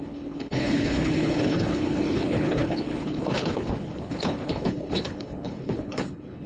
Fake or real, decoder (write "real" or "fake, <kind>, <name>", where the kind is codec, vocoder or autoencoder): fake, codec, HILCodec